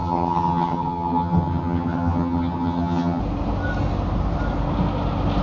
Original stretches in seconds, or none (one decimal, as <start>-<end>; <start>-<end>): 3.2-5.4

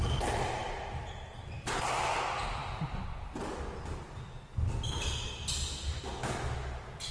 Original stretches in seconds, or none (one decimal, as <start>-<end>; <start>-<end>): 0.0-7.1

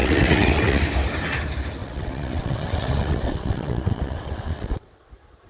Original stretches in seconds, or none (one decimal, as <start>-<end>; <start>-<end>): 0.8-1.8; 5.1-5.5

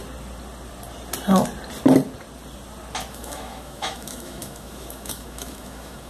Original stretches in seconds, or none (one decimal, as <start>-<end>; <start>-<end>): 0.0-3.1